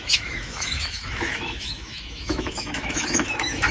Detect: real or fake fake